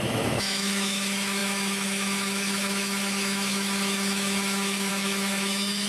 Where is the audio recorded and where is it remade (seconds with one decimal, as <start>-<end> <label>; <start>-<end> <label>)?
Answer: 0.0-5.9 remade